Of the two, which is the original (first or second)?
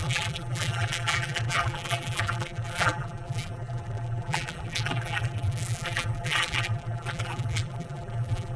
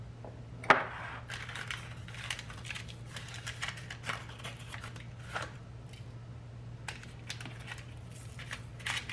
second